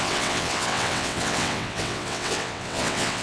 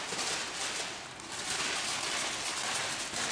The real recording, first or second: second